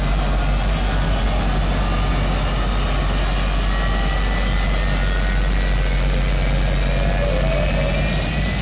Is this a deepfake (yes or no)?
no